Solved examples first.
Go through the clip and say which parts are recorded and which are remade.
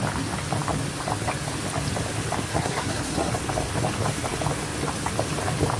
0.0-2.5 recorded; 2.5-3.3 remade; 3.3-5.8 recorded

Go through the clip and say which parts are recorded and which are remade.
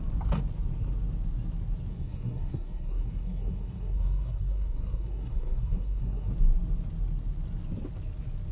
0.0-1.9 recorded; 1.9-6.3 remade; 6.3-8.5 recorded